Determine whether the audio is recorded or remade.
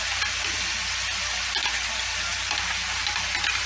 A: recorded